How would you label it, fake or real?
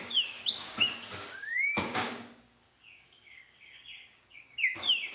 fake